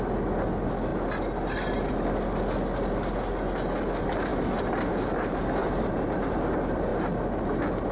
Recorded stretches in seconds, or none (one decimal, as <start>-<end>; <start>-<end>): 0.0-5.6; 6.4-7.9